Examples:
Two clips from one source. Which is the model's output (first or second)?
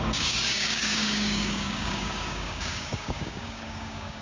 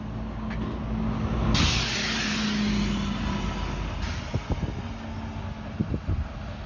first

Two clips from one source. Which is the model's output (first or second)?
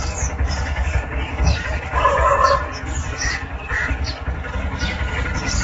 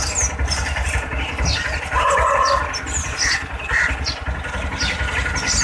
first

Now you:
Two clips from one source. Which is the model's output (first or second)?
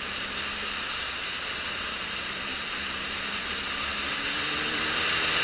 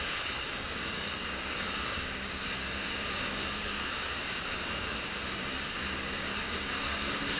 second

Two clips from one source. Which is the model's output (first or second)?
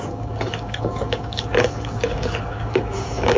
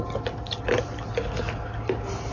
first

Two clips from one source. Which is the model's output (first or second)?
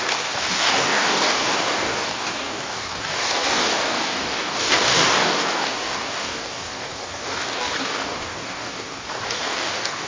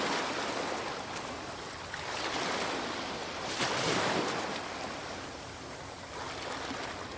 first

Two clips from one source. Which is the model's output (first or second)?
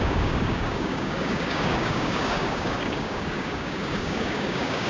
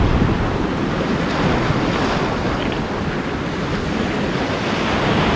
first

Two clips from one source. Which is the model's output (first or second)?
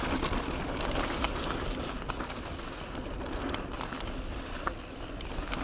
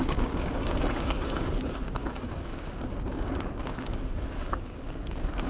second